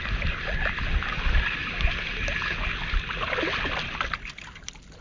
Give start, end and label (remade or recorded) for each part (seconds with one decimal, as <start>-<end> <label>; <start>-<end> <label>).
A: 0.0-5.0 recorded